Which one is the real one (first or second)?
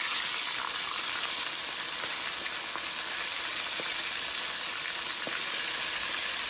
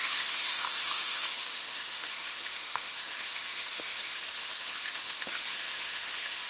first